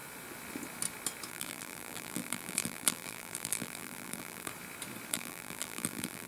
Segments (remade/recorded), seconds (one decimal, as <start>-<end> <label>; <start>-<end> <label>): 0.0-1.3 recorded; 1.3-4.5 remade; 4.5-5.1 recorded; 5.1-6.3 remade